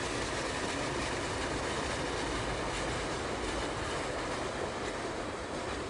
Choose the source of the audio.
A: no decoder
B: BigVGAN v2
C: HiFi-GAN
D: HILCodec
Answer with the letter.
A